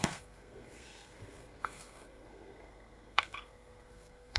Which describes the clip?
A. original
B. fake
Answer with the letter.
B